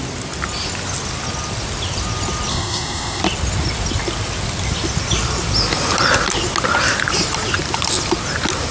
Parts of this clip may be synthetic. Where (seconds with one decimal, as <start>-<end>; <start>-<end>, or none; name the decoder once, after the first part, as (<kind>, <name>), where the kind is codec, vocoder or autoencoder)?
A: 2.5-3.2 (codec, SNAC)